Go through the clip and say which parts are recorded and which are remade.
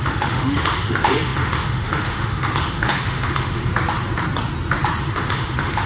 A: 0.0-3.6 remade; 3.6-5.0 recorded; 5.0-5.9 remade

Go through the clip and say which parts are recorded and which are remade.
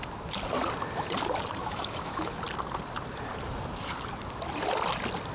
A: 0.0-1.6 recorded; 1.6-2.4 remade; 2.4-5.3 recorded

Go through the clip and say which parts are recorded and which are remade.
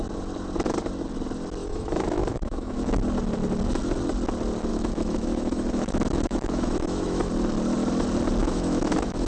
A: 0.0-1.6 recorded; 1.6-3.0 remade; 3.0-4.7 recorded; 4.7-7.3 remade; 7.3-8.4 recorded; 8.4-9.3 remade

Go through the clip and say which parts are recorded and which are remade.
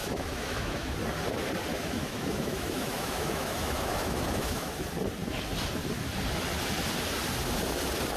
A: 0.0-0.9 remade; 0.9-1.7 recorded; 1.7-4.7 remade; 4.7-8.2 recorded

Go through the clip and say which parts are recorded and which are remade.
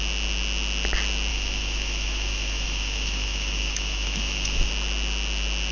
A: 0.0-1.3 recorded; 1.3-4.7 remade; 4.7-5.7 recorded